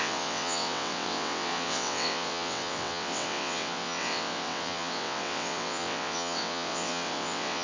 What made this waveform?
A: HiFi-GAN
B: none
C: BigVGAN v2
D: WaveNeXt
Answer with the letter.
D